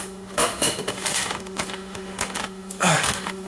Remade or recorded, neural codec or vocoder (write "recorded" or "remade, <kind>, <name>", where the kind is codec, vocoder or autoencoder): remade, autoencoder, DAC-VAE